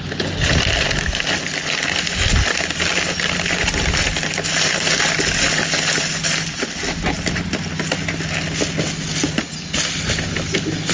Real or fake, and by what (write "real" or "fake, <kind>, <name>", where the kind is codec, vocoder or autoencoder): real